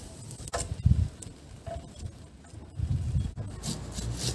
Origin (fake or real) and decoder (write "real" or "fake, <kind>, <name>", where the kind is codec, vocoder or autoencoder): real